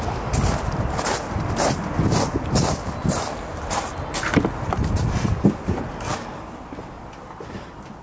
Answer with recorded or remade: recorded